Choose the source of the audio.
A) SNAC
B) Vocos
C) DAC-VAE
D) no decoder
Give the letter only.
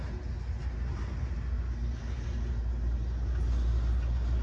D